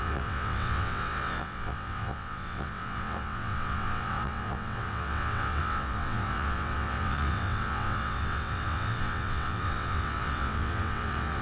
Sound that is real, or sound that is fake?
fake